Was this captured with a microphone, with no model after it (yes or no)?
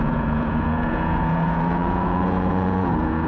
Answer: no